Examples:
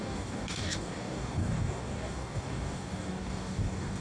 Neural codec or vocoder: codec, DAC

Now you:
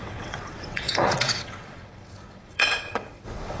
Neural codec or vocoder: vocoder, WaveNeXt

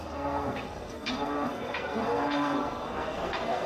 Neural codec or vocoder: codec, SNAC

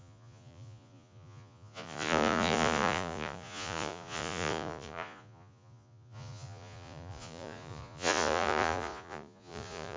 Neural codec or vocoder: vocoder, Vocos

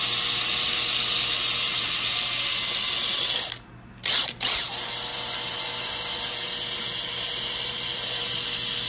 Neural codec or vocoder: none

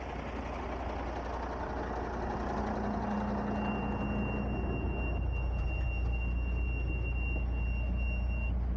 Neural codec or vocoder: none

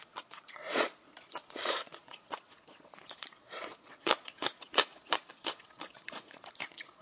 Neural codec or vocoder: vocoder, Vocos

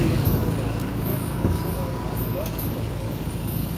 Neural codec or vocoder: codec, DAC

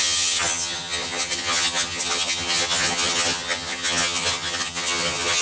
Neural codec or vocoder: vocoder, HiFi-GAN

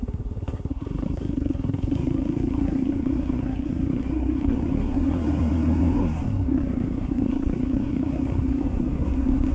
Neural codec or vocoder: codec, SNAC